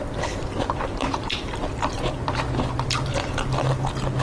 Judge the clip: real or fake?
real